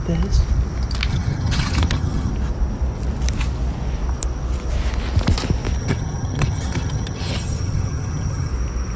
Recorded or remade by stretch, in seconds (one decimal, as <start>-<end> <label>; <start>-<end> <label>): 0.0-1.1 recorded; 1.1-2.3 remade; 2.3-5.8 recorded; 5.8-8.5 remade; 8.5-9.0 recorded